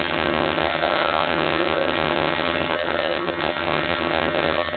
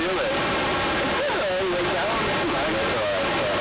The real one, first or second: second